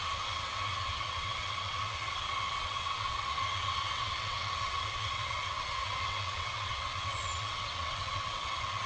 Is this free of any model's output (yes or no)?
no